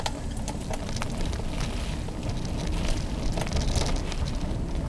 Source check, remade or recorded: recorded